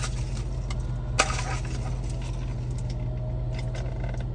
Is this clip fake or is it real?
real